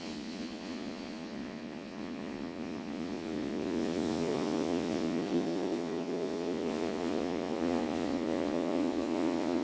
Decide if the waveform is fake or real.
fake